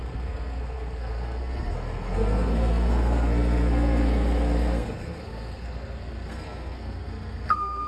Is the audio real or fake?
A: fake